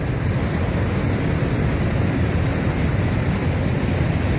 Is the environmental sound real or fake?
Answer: real